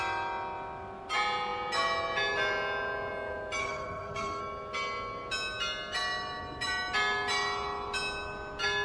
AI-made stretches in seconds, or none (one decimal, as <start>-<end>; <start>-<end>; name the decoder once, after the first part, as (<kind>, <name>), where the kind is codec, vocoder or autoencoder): 3.6-4.4 (codec, SNAC)